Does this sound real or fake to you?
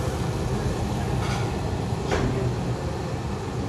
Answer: real